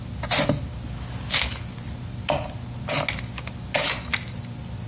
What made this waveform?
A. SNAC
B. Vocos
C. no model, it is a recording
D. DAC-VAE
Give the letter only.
C